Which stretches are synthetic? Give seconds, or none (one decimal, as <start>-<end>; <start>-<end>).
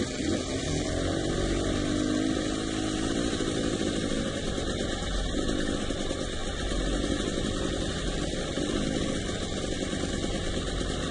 none